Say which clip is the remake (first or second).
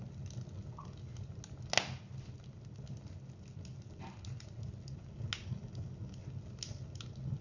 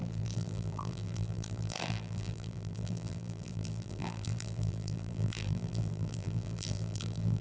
second